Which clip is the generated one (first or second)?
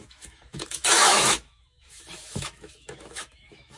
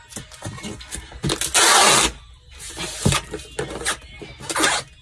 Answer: first